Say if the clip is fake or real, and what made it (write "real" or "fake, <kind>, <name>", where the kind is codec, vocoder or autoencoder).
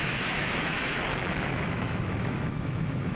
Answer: fake, autoencoder, DAC-VAE